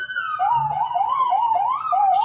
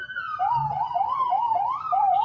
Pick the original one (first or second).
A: first